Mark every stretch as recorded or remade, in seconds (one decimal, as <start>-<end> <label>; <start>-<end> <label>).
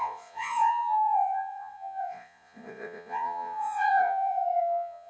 0.0-5.1 remade